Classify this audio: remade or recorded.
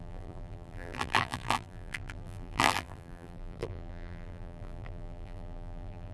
remade